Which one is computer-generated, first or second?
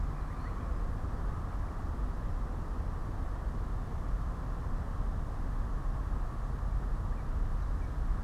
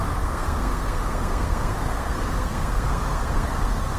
second